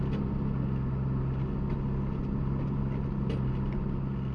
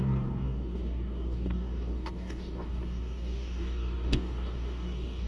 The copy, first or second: second